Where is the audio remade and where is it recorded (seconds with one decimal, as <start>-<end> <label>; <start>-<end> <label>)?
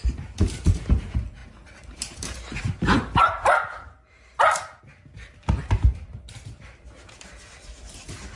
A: 0.0-1.4 recorded; 1.4-4.8 remade; 4.8-8.4 recorded